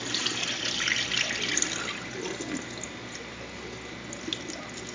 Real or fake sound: real